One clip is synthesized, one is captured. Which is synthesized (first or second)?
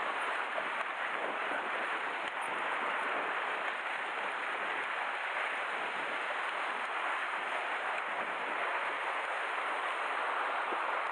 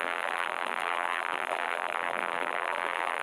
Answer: second